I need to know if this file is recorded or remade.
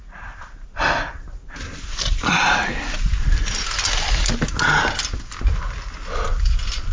recorded